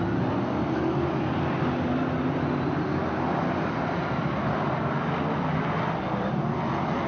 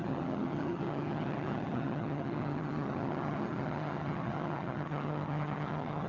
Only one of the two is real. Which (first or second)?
first